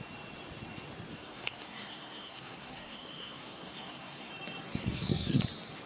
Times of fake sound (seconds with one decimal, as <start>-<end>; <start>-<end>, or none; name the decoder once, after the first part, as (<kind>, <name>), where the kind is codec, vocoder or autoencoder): 1.1-4.3 (codec, SNAC); 4.8-5.4